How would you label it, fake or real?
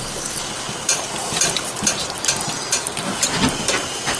real